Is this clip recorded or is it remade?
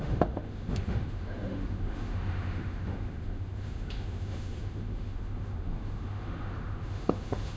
remade